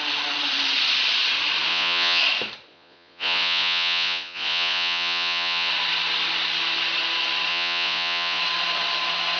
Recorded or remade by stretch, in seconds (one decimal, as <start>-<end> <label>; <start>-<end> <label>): 0.0-1.7 recorded; 1.7-2.2 remade; 2.2-2.7 recorded; 2.7-5.7 remade; 5.7-7.5 recorded; 7.5-8.4 remade; 8.4-9.4 recorded